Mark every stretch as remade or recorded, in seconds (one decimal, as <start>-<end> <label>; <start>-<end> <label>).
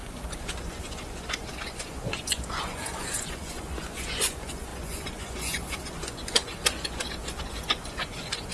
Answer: 0.0-8.5 remade